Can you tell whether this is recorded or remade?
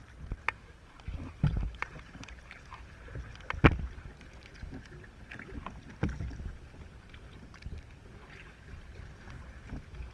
recorded